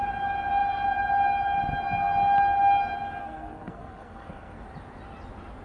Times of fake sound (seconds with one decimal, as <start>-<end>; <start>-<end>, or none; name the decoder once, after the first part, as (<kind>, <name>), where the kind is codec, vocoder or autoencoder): 3.2-4.6 (codec, SNAC)